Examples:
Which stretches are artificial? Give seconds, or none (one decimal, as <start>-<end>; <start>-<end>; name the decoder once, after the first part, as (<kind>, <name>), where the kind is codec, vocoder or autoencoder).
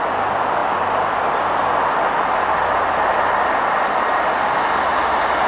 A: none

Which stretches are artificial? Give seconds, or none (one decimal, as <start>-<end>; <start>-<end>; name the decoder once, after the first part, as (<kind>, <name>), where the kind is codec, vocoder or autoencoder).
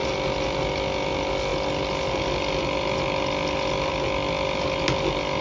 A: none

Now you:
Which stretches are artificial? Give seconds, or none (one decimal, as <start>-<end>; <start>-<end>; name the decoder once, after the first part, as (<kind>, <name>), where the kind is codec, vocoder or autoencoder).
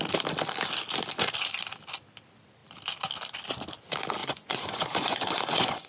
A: 4.2-5.9 (vocoder, Vocos)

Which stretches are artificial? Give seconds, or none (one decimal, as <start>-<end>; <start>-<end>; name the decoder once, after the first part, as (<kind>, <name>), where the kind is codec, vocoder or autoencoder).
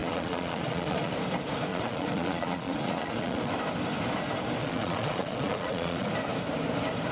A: 0.0-1.1 (vocoder, Vocos); 1.7-3.5; 4.6-6.1